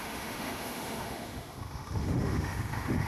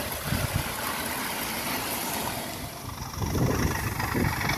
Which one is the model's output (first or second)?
first